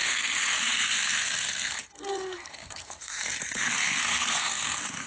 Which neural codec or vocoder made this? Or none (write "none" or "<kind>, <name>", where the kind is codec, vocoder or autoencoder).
codec, SNAC